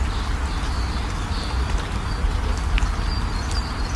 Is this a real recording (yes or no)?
yes